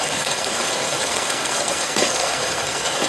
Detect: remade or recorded remade